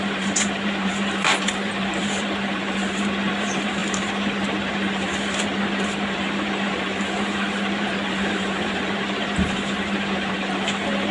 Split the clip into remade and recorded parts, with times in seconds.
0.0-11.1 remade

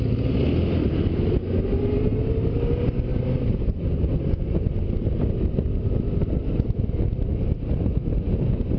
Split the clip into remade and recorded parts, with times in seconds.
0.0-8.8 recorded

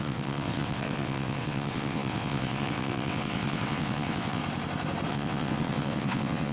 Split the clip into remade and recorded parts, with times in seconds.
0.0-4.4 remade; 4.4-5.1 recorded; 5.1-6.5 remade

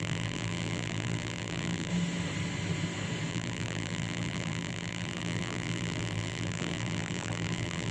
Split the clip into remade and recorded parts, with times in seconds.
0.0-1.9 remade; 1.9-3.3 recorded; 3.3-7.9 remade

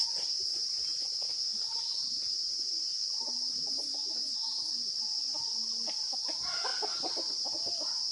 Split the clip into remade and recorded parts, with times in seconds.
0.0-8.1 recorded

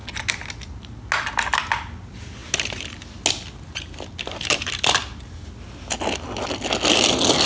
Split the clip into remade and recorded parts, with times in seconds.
0.0-7.5 recorded

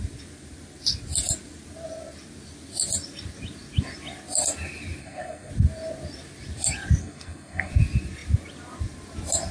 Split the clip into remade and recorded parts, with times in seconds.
0.0-5.0 recorded; 5.0-5.5 remade; 5.5-7.0 recorded; 7.0-7.7 remade; 7.7-9.5 recorded

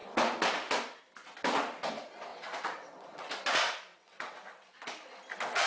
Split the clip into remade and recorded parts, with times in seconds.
0.0-2.3 recorded; 2.3-3.3 remade; 3.3-3.9 recorded; 3.9-4.4 remade; 4.4-5.7 recorded